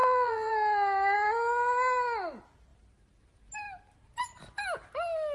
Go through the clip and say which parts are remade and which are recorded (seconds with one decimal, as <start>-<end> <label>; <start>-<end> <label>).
0.0-0.5 remade; 0.5-5.3 recorded